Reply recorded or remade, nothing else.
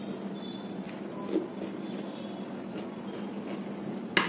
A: recorded